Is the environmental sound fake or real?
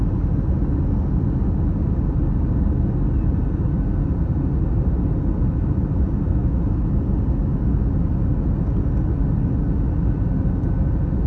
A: real